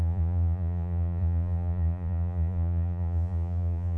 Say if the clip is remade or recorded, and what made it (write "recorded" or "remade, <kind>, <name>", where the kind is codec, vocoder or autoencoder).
remade, vocoder, Vocos